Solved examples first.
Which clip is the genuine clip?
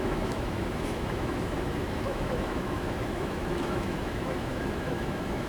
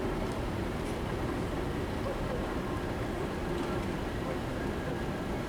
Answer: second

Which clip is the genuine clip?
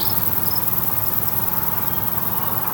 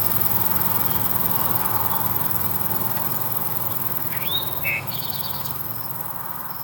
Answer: first